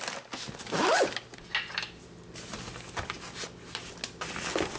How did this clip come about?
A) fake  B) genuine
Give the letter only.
B